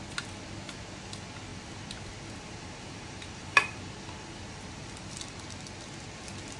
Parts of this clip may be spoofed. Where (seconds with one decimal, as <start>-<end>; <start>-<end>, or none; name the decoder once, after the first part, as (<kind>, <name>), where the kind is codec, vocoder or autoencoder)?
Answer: 1.5-5.5 (vocoder, BigVGAN v2)